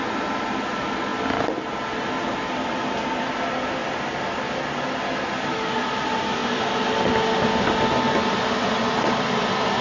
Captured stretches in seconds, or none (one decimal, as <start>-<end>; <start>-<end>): 0.0-9.8